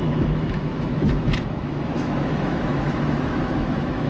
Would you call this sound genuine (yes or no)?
no